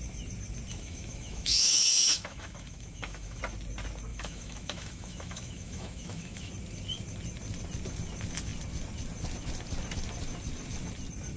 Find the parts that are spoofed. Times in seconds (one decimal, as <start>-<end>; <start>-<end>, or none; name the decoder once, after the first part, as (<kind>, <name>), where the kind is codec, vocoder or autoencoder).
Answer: 0.7-3.4 (autoencoder, DAC-VAE); 4.1-6.5